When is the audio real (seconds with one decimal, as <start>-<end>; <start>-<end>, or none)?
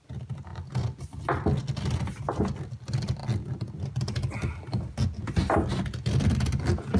0.0-7.0